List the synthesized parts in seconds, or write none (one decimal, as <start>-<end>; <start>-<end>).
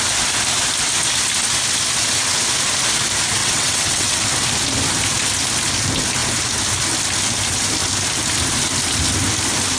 3.4-4.2